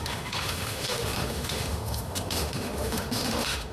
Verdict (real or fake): fake